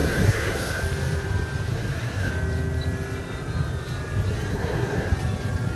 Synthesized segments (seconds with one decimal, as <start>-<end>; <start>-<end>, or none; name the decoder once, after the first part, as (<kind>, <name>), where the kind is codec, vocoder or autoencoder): 0.0-0.8 (codec, SNAC); 1.7-2.3; 4.5-5.1